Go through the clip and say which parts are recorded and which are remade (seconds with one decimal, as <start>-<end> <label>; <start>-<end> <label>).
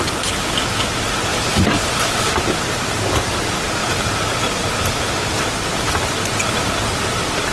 0.0-1.3 recorded; 1.3-2.3 remade; 2.3-3.8 recorded; 3.8-5.4 remade; 5.4-7.5 recorded